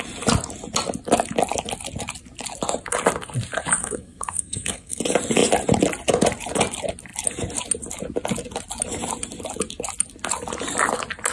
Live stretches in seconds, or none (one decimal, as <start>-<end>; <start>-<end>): 0.0-3.8; 5.0-11.3